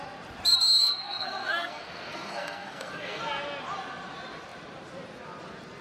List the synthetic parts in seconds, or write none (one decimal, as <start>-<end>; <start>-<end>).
0.8-3.2